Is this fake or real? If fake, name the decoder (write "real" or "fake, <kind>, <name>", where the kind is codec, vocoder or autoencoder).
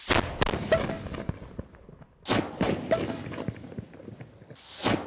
real